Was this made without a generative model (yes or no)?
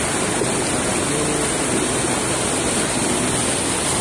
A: yes